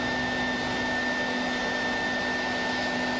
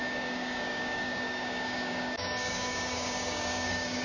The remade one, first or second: second